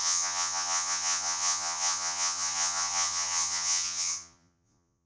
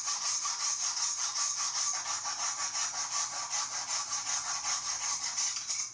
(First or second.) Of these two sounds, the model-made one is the first